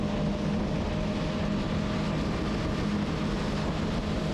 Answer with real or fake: real